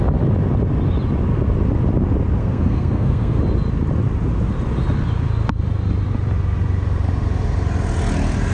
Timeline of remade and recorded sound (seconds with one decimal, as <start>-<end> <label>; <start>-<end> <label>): 0.0-2.4 recorded; 2.4-3.4 remade; 3.4-8.5 recorded